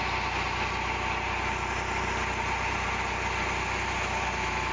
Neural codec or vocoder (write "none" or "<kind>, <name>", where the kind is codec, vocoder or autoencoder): none